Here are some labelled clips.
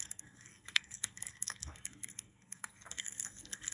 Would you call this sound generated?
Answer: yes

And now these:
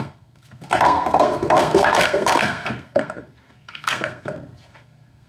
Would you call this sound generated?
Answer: yes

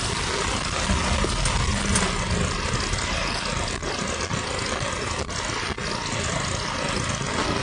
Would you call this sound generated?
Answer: no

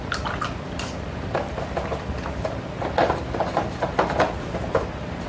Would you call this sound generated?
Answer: no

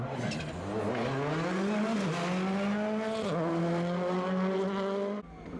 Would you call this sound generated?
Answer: no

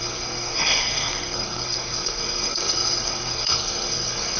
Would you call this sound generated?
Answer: yes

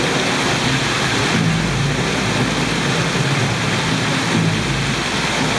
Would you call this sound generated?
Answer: no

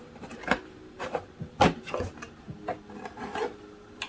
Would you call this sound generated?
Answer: no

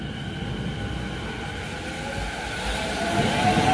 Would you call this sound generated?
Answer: no